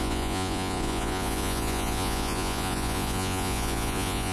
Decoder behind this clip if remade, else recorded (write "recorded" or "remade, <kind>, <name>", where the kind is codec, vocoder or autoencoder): remade, vocoder, Vocos